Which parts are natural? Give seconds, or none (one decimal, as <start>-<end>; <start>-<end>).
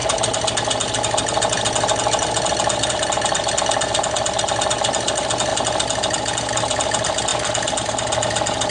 0.0-8.7